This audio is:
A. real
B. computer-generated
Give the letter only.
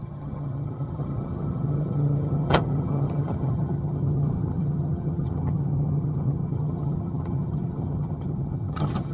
B